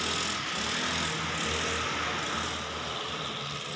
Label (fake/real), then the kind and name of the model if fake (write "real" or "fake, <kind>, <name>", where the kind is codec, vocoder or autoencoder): real